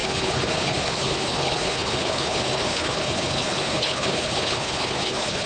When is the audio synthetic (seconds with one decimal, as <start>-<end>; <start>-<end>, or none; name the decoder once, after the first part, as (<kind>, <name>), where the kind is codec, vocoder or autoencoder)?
0.0-5.5 (codec, HILCodec)